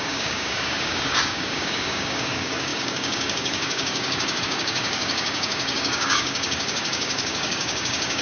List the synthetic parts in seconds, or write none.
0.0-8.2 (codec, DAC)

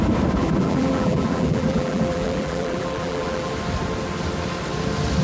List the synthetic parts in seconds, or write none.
0.4-3.5 (vocoder, BigVGAN v2)

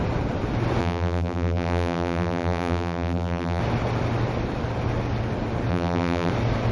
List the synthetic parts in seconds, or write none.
0.8-3.6 (vocoder, BigVGAN v2); 5.7-6.3

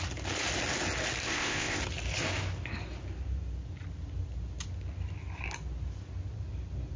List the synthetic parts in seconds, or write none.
1.2-1.8 (codec, ZipCodec)

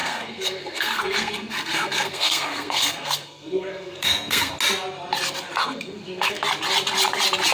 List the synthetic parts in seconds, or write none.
0.0-4.5 (codec, SNAC); 5.6-6.4

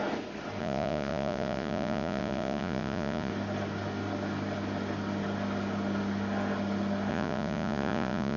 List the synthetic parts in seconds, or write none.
0.6-3.3 (vocoder, Vocos); 7.1-8.4

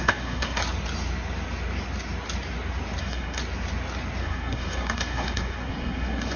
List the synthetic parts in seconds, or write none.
0.0-0.6 (codec, SNAC); 3.0-3.4; 4.2-6.4